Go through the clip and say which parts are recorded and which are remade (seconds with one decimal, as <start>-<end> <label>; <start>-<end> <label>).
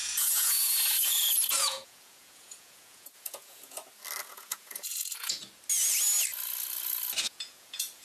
0.0-3.8 remade; 3.8-4.3 recorded; 4.3-5.4 remade; 5.4-7.2 recorded; 7.2-8.0 remade